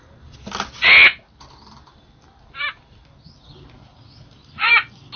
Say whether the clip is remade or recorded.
recorded